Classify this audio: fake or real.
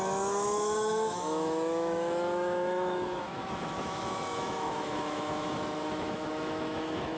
fake